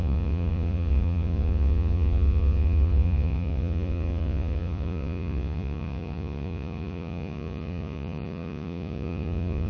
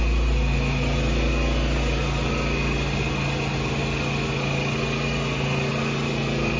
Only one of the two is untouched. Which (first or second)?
second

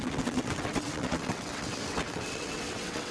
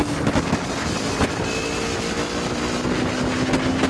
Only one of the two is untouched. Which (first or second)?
second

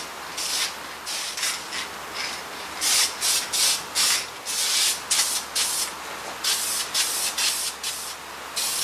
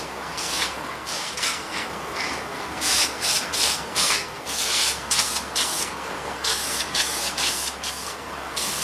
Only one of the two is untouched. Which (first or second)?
first